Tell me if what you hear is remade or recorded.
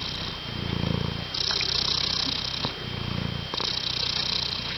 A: recorded